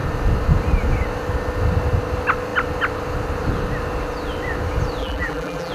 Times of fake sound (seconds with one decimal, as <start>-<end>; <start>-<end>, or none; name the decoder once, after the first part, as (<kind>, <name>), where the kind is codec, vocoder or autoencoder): 5.0-5.7 (vocoder, BigVGAN v2)